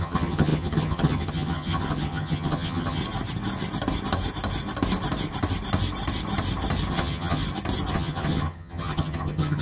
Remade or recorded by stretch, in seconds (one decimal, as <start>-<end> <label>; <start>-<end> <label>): 0.0-3.0 remade; 3.0-6.9 recorded; 6.9-7.4 remade; 7.4-7.9 recorded; 7.9-9.6 remade